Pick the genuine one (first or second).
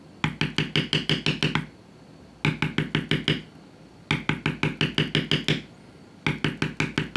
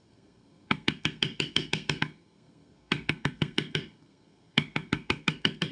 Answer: first